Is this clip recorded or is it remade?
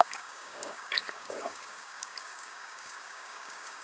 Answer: remade